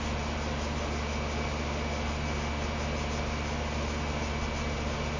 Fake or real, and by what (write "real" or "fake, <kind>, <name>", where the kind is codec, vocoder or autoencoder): real